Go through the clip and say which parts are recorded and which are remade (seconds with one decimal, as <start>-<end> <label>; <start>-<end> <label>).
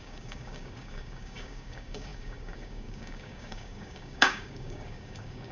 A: 0.0-5.5 remade